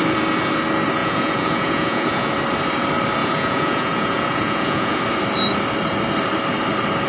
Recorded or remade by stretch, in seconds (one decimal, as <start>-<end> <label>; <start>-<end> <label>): 0.0-1.0 recorded; 1.0-2.3 remade; 2.3-3.2 recorded; 3.2-5.0 remade; 5.0-7.1 recorded